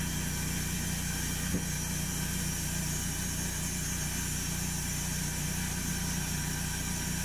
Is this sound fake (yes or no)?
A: no